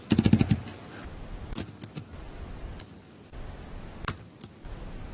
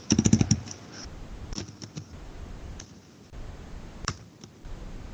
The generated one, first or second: second